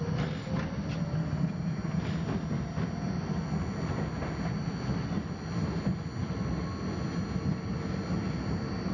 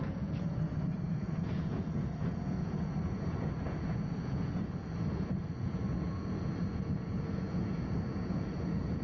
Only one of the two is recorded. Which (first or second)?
first